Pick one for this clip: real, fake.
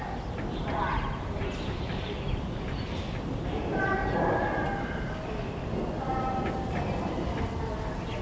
real